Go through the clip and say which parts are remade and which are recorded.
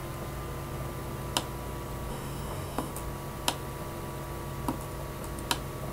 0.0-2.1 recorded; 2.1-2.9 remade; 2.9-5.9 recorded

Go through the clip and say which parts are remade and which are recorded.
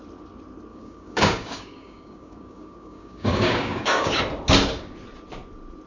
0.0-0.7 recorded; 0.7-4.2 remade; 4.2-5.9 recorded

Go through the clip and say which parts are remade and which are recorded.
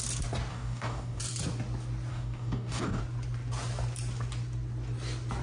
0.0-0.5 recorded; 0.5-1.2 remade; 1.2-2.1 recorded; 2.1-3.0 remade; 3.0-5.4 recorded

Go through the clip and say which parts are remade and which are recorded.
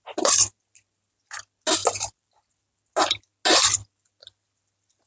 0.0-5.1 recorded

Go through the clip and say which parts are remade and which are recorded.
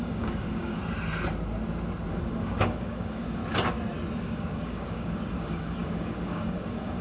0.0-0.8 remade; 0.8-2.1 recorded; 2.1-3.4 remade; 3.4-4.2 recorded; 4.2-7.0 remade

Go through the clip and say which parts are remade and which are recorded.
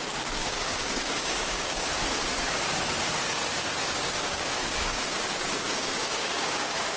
0.0-1.9 remade; 1.9-3.6 recorded; 3.6-7.0 remade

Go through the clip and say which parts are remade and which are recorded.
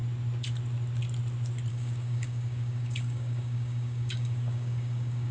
0.0-1.7 recorded; 1.7-5.3 remade